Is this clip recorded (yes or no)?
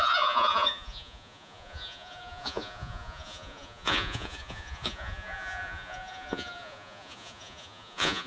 no